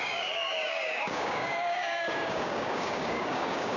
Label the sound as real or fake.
fake